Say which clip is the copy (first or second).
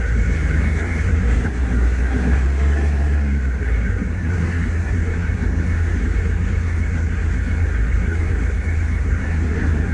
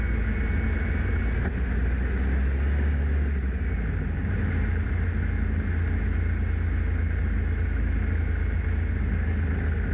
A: first